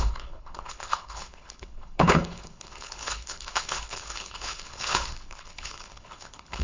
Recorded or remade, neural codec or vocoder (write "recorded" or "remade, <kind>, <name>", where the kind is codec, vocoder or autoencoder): remade, codec, HILCodec